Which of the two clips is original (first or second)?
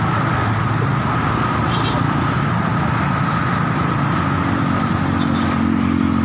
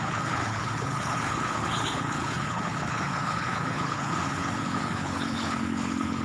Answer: first